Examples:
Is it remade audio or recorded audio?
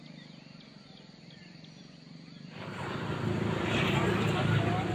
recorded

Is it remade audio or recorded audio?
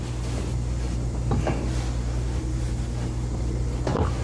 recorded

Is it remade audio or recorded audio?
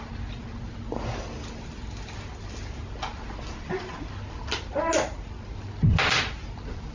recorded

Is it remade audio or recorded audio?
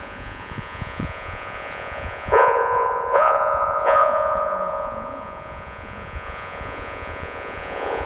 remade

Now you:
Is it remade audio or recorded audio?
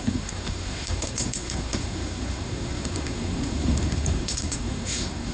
remade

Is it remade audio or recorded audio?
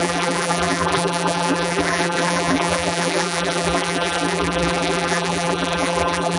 remade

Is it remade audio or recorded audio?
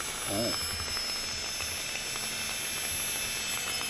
recorded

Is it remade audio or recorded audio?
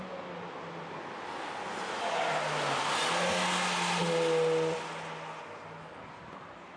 recorded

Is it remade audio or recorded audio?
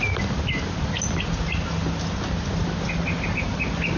recorded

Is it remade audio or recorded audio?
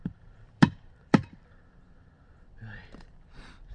remade